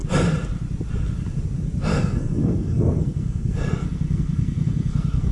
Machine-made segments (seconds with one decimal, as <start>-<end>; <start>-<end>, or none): 1.9-5.3